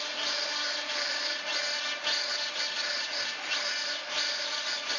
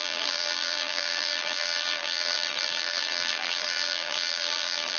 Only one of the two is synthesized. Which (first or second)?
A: second